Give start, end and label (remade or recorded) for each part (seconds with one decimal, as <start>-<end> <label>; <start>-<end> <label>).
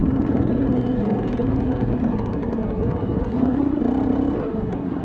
0.0-3.8 remade; 3.8-4.4 recorded; 4.4-5.0 remade